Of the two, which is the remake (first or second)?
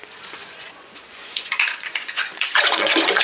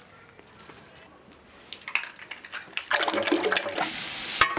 first